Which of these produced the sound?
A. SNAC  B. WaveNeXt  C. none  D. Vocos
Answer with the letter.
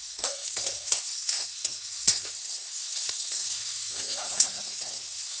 A